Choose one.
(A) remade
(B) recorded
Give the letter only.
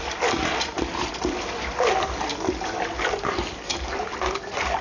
B